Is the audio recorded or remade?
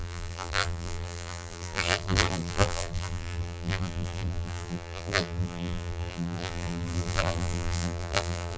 remade